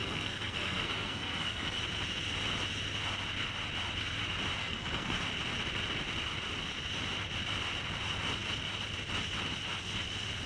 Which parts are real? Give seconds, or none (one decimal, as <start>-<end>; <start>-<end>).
1.8-4.6; 5.2-10.5